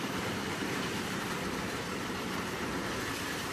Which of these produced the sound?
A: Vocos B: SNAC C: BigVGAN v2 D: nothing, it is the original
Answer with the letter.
C